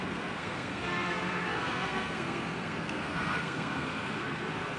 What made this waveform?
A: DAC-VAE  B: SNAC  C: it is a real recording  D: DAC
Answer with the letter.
B